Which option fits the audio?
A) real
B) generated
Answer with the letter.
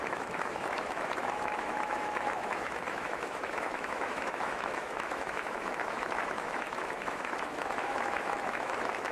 B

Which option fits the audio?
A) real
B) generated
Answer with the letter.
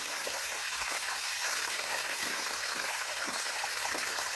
B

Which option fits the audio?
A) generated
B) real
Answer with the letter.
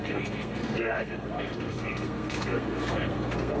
A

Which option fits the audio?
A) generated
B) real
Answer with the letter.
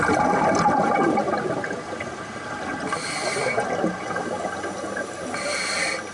B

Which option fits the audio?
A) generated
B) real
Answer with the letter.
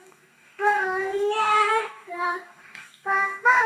A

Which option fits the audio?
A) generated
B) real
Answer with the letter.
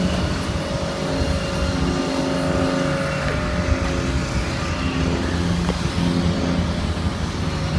B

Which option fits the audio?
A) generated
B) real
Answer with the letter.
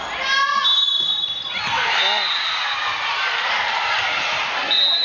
B